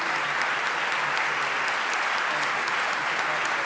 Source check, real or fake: real